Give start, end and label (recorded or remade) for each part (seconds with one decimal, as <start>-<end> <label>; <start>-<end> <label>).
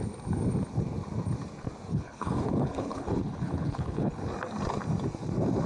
0.0-1.9 recorded; 1.9-4.1 remade; 4.1-5.7 recorded